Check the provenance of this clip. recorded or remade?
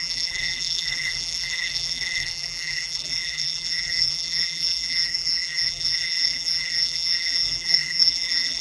remade